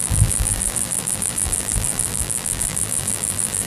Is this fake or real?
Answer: fake